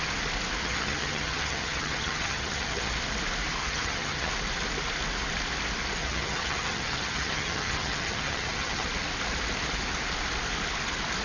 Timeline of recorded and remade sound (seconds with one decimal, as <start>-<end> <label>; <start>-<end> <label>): 0.0-0.6 recorded; 0.6-2.9 remade; 2.9-3.6 recorded; 3.6-4.3 remade; 4.3-6.0 recorded; 6.0-8.9 remade; 8.9-11.2 recorded